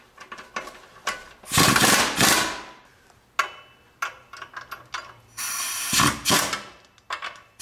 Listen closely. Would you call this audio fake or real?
real